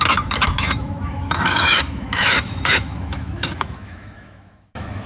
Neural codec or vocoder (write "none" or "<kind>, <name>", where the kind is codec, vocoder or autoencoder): autoencoder, DAC-VAE